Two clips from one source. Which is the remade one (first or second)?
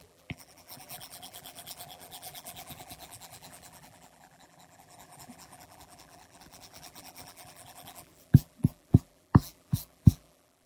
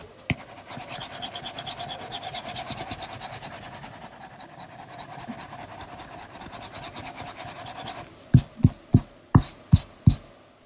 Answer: first